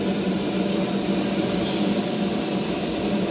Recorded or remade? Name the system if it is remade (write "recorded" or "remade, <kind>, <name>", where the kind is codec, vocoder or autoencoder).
recorded